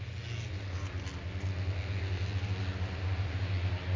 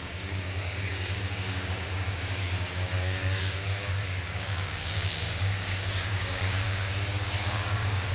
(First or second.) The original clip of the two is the first